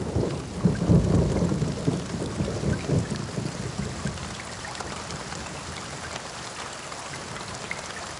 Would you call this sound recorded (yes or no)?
yes